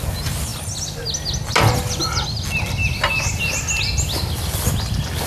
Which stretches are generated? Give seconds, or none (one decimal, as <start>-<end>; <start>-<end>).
none